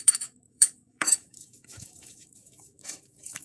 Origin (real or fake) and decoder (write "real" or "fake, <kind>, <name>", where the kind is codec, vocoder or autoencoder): fake, autoencoder, DAC-VAE